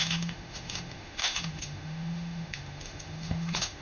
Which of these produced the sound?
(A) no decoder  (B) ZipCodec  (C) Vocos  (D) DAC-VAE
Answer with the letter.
D